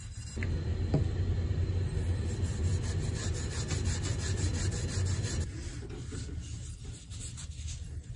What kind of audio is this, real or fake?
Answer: real